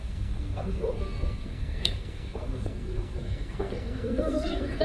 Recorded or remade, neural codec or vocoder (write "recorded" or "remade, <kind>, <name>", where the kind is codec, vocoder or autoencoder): remade, codec, SNAC